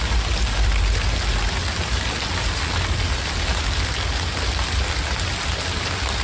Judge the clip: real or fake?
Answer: real